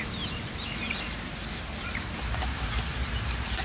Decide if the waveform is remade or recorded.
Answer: remade